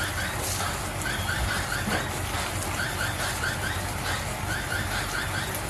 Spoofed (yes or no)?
no